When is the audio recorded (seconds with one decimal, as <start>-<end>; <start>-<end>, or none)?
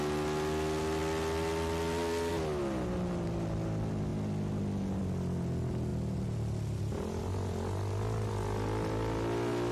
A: 0.0-9.7